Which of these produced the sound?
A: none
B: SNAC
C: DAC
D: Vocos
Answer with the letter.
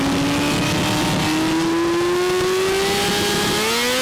A